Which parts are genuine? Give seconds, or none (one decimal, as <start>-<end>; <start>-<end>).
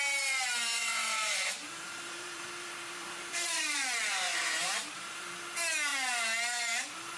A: 0.0-1.6; 5.4-5.9; 6.7-7.2